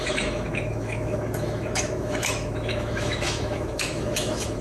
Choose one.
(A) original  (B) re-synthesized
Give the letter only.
B